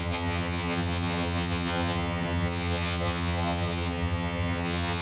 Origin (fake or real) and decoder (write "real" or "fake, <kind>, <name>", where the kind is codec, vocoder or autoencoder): fake, vocoder, HiFi-GAN